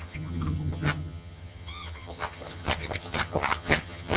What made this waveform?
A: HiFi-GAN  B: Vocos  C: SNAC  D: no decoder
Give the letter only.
A